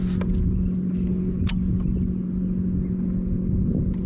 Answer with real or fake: real